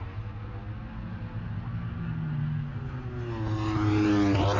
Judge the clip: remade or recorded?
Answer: recorded